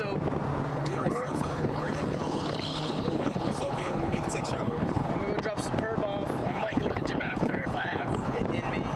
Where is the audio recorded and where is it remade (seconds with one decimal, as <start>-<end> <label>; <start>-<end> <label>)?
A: 0.0-0.7 recorded; 0.7-5.1 remade; 5.1-6.4 recorded; 6.4-8.4 remade; 8.4-9.0 recorded